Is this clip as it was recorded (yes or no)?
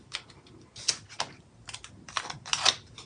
yes